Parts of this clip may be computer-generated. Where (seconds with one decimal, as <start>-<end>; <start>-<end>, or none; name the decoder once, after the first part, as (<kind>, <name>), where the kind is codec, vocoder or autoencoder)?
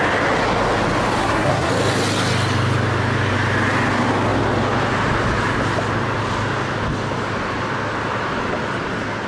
1.2-1.7 (codec, SNAC)